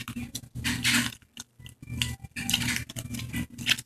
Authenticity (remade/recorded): recorded